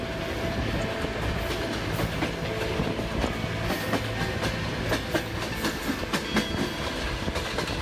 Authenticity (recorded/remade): recorded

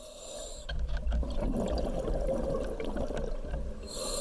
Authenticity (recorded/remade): recorded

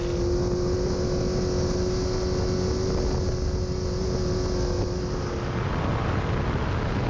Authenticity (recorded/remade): recorded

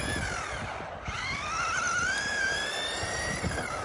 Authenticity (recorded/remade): recorded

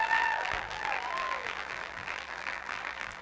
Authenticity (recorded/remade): remade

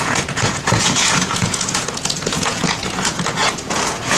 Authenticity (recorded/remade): remade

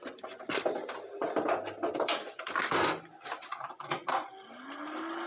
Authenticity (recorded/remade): remade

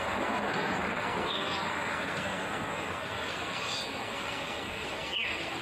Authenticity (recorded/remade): remade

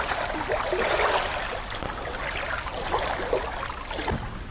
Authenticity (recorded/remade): recorded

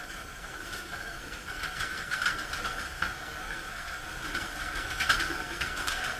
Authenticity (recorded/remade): remade